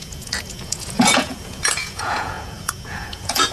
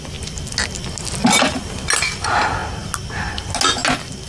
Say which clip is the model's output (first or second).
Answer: first